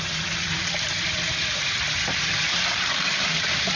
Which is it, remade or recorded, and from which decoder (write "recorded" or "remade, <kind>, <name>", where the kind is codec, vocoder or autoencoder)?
recorded